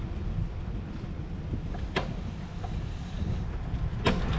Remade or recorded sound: recorded